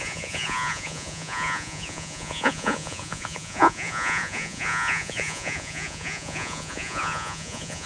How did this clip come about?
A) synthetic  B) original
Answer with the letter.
A